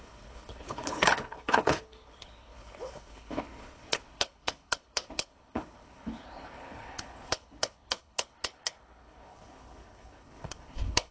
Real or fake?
fake